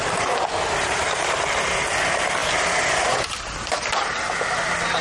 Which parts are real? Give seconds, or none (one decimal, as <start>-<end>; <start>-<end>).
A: 0.0-5.0